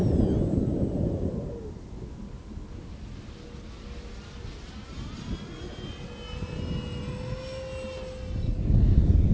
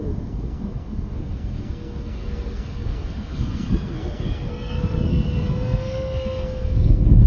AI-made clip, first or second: second